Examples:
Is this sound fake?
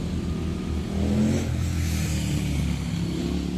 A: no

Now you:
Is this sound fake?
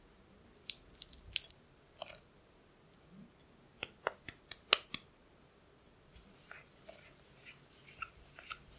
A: no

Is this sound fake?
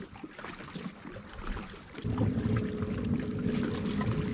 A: no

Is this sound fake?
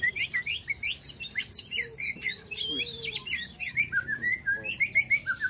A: yes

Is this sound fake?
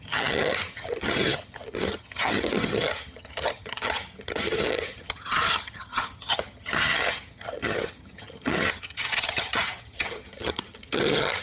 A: yes